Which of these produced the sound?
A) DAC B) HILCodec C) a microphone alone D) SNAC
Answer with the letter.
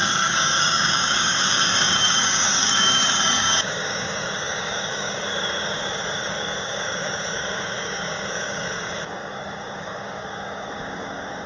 A